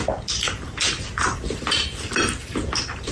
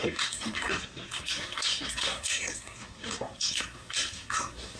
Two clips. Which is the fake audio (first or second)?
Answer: second